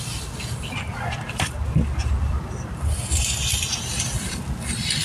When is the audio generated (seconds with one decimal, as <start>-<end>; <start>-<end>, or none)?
2.0-5.0